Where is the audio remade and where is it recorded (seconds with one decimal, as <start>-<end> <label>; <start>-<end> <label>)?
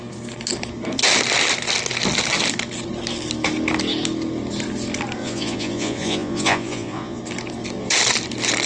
0.0-5.2 recorded; 5.2-7.2 remade; 7.2-8.7 recorded